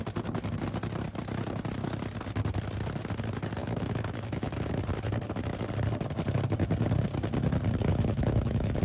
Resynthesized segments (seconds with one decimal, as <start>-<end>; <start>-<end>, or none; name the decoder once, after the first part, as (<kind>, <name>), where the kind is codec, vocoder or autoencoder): 3.6-4.7 (autoencoder, DAC-VAE); 7.9-8.8